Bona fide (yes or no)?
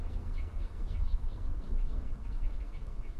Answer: no